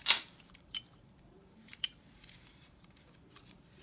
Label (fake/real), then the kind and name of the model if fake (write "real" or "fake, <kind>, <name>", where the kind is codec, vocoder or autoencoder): fake, vocoder, BigVGAN v2